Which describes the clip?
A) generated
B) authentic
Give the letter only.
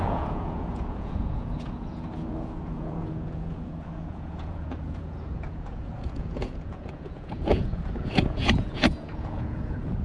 A